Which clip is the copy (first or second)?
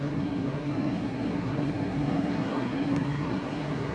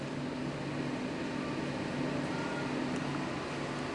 first